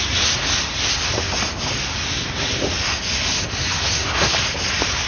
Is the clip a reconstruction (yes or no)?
no